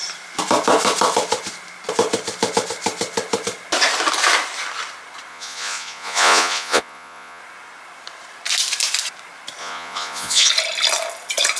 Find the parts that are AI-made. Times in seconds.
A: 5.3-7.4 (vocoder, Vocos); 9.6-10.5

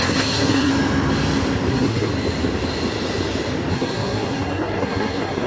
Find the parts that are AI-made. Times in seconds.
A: 0.0-0.7 (codec, SNAC); 1.7-2.1; 3.7-5.5

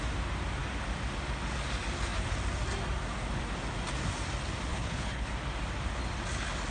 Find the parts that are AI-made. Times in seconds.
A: 4.7-5.3 (codec, HILCodec)

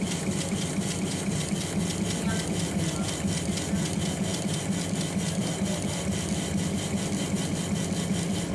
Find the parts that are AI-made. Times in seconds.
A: none

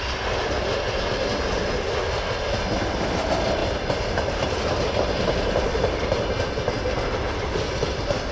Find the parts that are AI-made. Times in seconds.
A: none

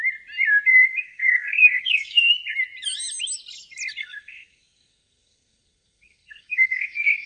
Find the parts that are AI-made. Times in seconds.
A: 0.7-2.3 (codec, SNAC); 4.0-7.3